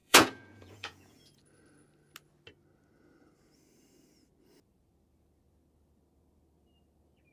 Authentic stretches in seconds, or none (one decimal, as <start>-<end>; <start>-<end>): 1.4-7.3